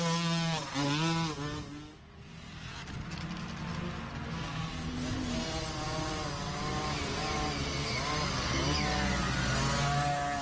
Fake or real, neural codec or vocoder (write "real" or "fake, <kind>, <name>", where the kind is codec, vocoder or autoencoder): real